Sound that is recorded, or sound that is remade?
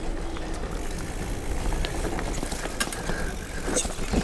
recorded